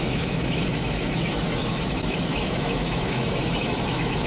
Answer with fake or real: fake